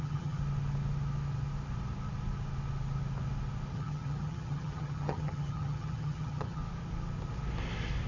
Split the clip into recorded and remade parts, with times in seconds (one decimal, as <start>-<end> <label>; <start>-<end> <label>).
0.0-0.4 remade; 0.4-3.7 recorded; 3.7-6.6 remade; 6.6-8.1 recorded